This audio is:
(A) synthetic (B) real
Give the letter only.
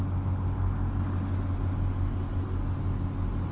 B